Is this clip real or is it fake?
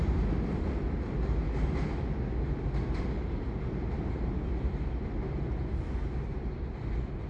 real